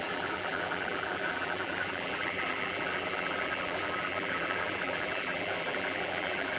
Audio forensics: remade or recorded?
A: remade